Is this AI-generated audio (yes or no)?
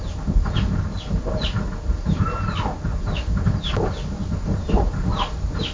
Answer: no